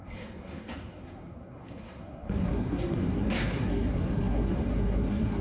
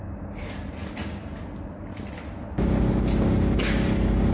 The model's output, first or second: first